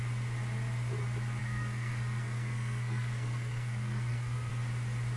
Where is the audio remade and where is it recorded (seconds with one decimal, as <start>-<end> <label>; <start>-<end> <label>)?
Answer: 0.0-1.4 recorded; 1.4-4.5 remade; 4.5-5.2 recorded

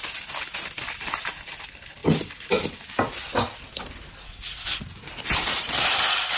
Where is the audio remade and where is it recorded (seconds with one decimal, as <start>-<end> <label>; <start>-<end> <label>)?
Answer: 0.0-6.4 recorded

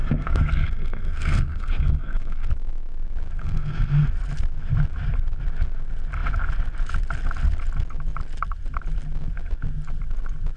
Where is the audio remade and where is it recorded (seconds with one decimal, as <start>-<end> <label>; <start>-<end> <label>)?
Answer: 0.0-2.5 remade; 2.5-3.4 recorded; 3.4-4.1 remade; 4.1-10.6 recorded

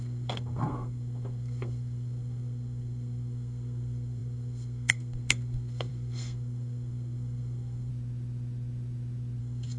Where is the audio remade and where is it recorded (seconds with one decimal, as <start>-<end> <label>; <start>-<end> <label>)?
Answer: 0.0-7.9 remade; 7.9-9.4 recorded; 9.4-9.8 remade

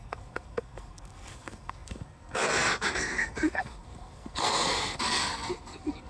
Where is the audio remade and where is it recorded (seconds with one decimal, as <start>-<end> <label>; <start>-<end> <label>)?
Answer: 0.0-6.1 remade

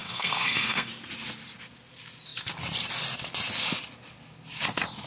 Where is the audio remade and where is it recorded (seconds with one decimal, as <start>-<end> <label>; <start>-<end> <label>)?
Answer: 0.0-0.9 remade; 0.9-5.1 recorded

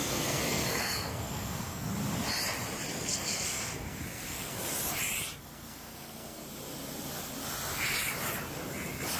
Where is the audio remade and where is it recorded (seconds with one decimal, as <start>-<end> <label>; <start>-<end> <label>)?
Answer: 0.0-1.9 remade; 1.9-2.9 recorded; 2.9-4.7 remade; 4.7-5.4 recorded; 5.4-6.4 remade; 6.4-9.2 recorded

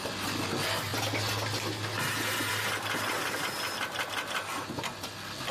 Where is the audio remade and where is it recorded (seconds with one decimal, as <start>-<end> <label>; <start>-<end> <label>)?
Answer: 0.0-5.5 recorded